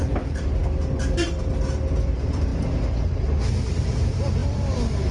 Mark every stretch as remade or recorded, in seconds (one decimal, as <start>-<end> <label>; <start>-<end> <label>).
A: 0.0-0.6 remade; 0.6-1.9 recorded; 1.9-2.5 remade; 2.5-3.7 recorded; 3.7-5.1 remade